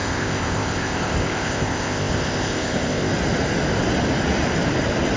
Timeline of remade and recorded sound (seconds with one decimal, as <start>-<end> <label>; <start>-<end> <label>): 0.0-3.1 remade; 3.1-5.2 recorded